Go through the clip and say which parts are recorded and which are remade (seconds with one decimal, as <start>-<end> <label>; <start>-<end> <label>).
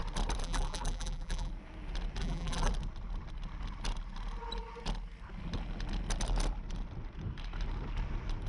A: 0.0-0.4 recorded; 0.4-1.5 remade; 1.5-2.2 recorded; 2.2-2.7 remade; 2.7-8.5 recorded